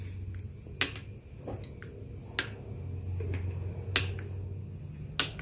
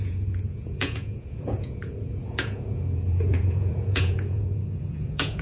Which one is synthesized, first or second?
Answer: second